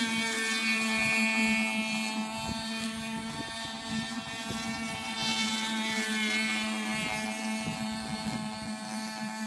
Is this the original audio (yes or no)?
yes